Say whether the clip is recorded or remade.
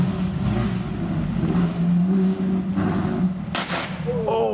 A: recorded